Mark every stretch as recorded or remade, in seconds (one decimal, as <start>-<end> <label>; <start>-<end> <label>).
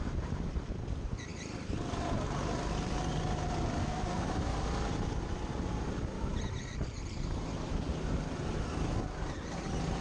0.0-3.8 recorded; 3.8-4.3 remade; 4.3-10.0 recorded